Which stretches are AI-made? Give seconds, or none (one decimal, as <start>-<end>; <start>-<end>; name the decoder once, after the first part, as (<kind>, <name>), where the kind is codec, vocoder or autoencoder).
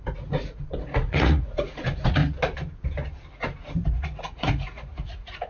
0.0-2.2 (vocoder, Vocos); 3.7-5.5